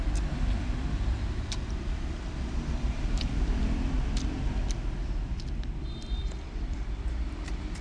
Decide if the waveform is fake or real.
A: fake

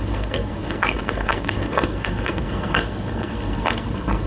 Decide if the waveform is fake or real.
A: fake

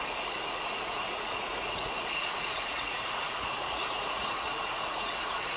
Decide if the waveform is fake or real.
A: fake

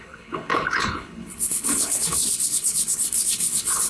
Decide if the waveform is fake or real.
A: fake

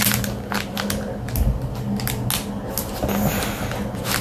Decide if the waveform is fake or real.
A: real